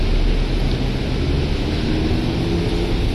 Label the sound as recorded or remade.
recorded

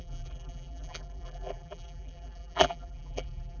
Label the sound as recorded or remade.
remade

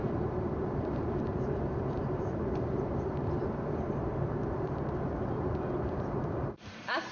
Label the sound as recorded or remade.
remade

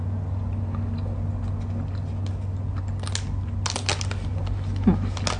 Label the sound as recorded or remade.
recorded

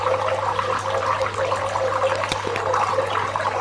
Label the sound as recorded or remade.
remade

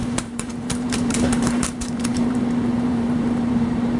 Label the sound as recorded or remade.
remade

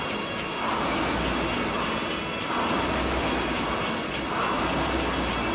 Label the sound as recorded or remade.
recorded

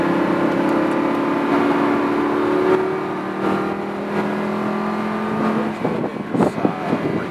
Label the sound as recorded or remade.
recorded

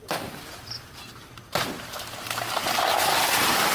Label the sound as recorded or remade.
recorded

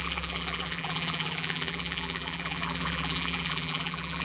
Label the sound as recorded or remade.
remade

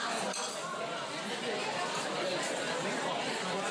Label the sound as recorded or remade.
remade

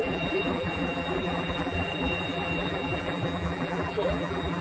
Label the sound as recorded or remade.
remade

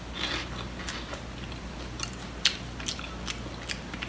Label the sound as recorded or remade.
recorded